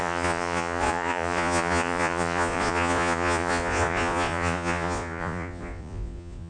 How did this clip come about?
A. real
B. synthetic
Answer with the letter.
B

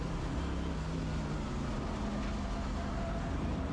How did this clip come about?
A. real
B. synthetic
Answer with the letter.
A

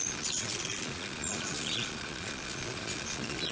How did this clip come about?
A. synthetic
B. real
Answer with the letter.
A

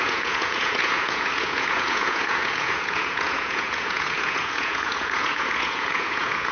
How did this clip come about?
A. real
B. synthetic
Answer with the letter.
B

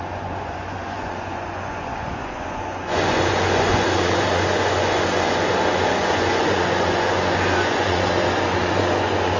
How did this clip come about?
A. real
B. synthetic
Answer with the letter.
B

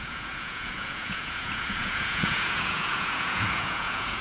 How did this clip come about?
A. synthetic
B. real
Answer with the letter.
A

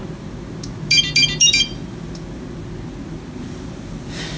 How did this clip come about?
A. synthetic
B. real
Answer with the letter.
B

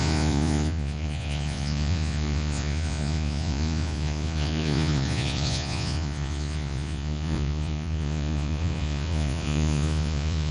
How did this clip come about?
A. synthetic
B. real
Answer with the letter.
A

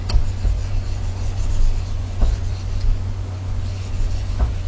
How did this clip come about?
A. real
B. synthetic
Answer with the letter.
B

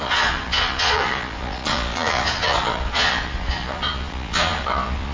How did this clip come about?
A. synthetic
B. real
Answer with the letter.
A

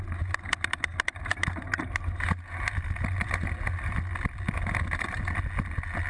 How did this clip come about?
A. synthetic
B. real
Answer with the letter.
B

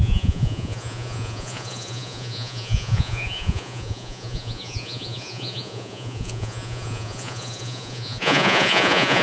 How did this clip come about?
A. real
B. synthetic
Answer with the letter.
B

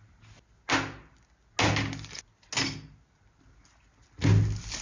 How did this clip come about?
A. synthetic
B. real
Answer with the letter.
B